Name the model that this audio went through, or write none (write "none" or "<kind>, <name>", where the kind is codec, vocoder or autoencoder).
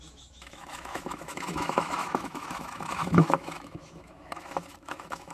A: autoencoder, DAC-VAE